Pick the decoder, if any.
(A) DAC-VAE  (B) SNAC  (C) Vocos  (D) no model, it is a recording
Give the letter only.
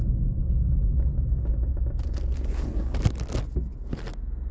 D